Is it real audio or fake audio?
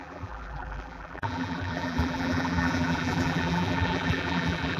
fake